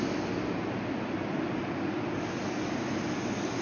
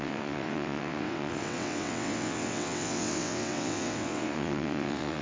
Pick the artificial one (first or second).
second